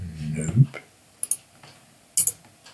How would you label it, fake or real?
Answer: real